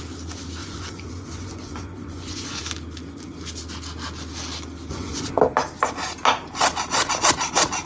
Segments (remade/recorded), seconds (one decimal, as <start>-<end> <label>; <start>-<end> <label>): 0.0-0.6 recorded; 0.6-2.6 remade; 2.6-4.9 recorded; 4.9-5.4 remade; 5.4-7.9 recorded